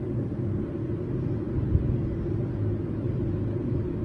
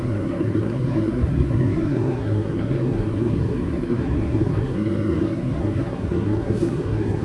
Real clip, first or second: first